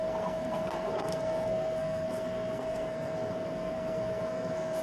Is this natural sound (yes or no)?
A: no